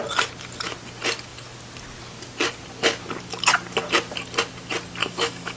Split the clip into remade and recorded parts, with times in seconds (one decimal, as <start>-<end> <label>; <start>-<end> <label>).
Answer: 0.0-5.0 recorded; 5.0-5.6 remade